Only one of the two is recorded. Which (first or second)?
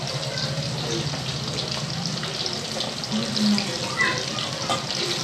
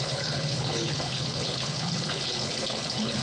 first